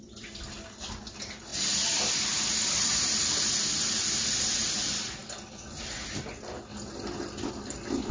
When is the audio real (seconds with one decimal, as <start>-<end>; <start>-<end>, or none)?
0.0-8.1